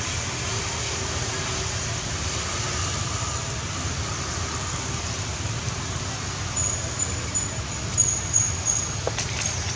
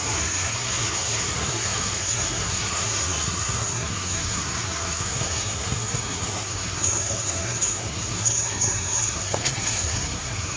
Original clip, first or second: first